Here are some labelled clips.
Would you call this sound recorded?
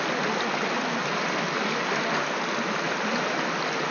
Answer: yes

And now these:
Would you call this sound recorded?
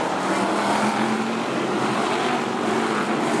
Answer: yes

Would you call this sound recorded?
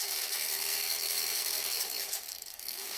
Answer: no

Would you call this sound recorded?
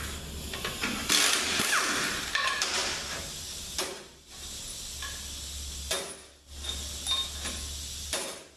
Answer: yes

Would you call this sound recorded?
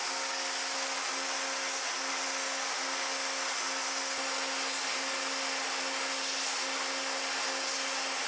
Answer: yes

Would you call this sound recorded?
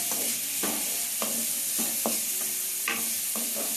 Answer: yes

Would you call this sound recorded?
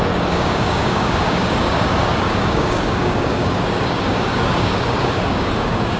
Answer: no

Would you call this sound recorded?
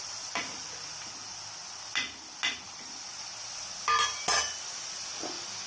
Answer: yes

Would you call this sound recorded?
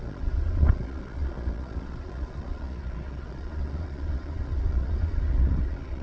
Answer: no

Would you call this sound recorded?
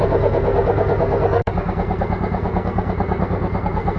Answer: no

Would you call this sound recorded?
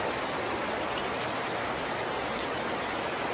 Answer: yes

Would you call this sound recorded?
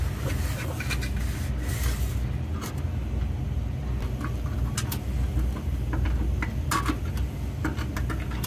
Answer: yes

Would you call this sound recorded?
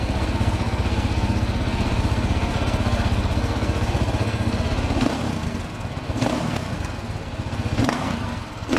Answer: no